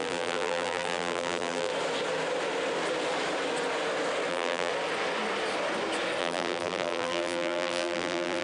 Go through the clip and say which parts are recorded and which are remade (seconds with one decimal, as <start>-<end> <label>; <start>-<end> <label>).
0.0-1.7 remade; 1.7-4.3 recorded; 4.3-4.7 remade; 4.7-6.2 recorded; 6.2-8.4 remade